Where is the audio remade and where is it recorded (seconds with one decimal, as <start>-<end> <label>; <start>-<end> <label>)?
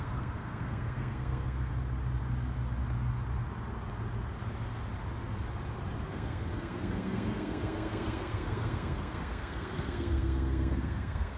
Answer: 0.0-1.7 remade; 1.7-6.1 recorded; 6.1-11.4 remade